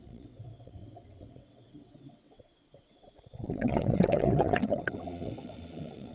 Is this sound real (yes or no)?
no